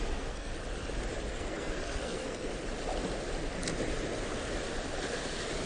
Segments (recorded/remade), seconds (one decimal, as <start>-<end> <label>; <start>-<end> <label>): 0.0-0.5 remade; 0.5-1.3 recorded; 1.3-2.5 remade; 2.5-5.7 recorded